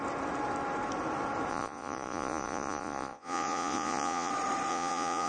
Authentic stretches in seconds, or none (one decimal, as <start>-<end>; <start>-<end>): 0.0-1.5; 4.3-4.7